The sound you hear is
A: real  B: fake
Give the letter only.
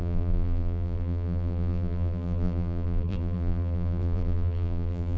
B